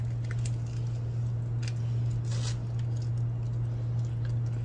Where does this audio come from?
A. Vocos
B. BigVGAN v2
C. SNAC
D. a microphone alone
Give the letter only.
D